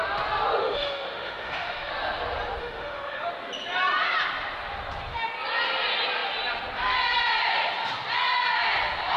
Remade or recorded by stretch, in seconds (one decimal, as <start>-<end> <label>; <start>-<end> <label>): 0.0-0.6 recorded; 0.6-1.9 remade; 1.9-2.6 recorded; 2.6-3.3 remade; 3.3-9.2 recorded